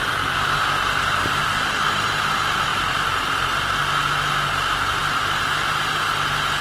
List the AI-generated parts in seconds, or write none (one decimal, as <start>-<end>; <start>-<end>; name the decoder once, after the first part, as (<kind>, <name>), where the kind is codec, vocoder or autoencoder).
none